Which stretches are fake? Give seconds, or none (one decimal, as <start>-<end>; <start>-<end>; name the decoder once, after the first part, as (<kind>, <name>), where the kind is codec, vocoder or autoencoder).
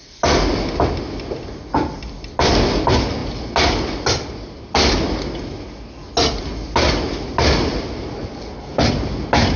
7.7-8.4 (vocoder, BigVGAN v2)